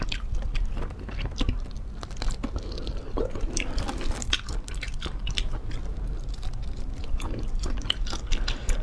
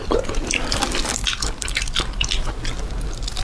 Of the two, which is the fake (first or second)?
first